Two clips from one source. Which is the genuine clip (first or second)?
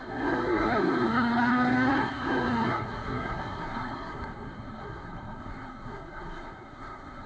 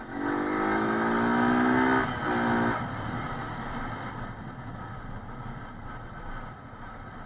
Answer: second